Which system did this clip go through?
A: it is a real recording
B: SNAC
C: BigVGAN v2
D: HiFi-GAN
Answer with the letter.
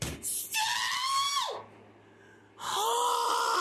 A